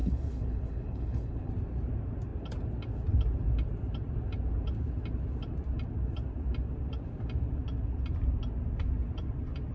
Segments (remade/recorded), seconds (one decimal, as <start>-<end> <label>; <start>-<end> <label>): 0.0-1.5 remade; 1.5-9.7 recorded